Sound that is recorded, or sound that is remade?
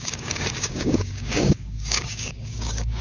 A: remade